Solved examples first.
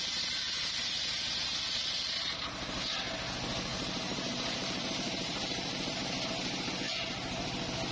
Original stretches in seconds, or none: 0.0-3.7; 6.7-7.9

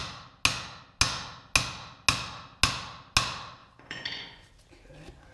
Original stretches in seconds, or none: 0.0-3.6; 4.5-5.3

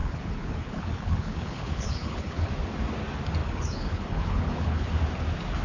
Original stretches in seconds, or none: 2.5-3.4; 4.9-5.6

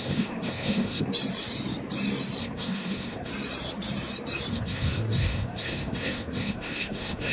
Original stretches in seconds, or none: 1.1-2.4; 3.3-4.5

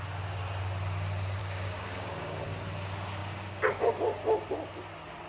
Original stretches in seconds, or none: 0.0-1.4; 2.4-3.2; 3.9-5.3